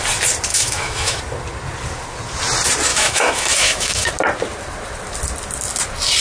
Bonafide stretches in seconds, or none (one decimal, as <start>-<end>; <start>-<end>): 0.0-0.5; 1.2-2.9; 4.1-6.2